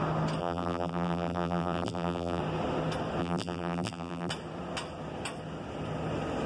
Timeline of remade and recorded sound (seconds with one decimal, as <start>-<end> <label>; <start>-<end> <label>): 0.0-0.4 recorded; 0.4-2.4 remade; 2.4-3.2 recorded; 3.2-4.3 remade; 4.3-6.5 recorded